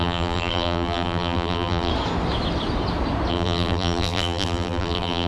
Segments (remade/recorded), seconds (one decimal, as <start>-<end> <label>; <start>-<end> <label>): 0.0-1.9 remade; 1.9-3.3 recorded; 3.3-5.3 remade